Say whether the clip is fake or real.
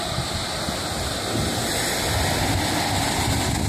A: real